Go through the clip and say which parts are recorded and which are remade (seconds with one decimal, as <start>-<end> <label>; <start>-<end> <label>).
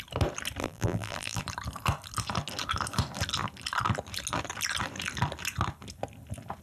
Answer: 0.0-0.6 recorded; 0.6-1.4 remade; 1.4-6.6 recorded